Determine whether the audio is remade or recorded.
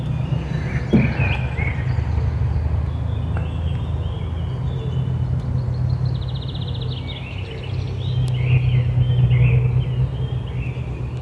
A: recorded